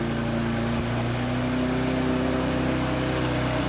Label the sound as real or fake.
real